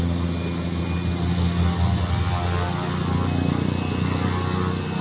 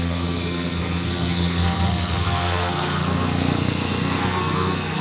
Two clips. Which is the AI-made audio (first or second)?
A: second